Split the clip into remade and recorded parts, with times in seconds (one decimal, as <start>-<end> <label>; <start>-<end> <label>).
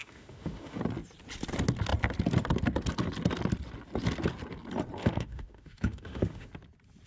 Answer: 0.0-0.8 remade; 0.8-5.0 recorded; 5.0-6.5 remade; 6.5-7.1 recorded